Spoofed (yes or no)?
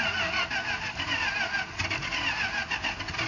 no